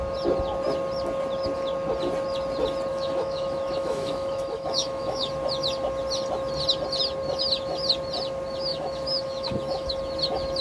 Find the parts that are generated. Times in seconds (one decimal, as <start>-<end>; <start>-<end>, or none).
2.9-5.3; 8.7-10.0